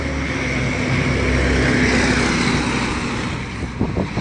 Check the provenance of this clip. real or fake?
real